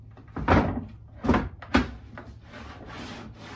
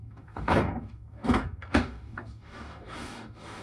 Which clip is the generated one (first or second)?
second